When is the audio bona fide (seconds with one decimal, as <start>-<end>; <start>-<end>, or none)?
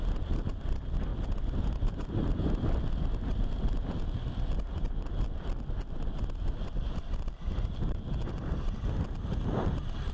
0.0-10.1